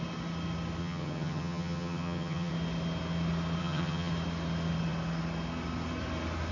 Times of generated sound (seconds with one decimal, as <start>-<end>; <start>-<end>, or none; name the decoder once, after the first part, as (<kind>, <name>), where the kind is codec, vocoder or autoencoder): 0.8-2.5 (vocoder, HiFi-GAN); 3.6-4.1